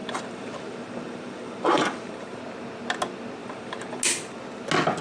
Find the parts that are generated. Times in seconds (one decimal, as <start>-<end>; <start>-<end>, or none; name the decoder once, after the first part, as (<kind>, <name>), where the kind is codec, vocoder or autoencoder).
0.0-2.4 (vocoder, BigVGAN v2); 3.4-4.0